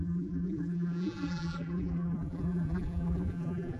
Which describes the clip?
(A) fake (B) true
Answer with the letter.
A